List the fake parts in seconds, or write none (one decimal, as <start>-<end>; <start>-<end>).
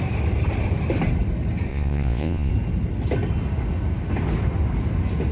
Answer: 1.7-2.5